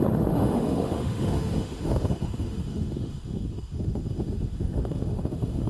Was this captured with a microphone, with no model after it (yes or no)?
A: no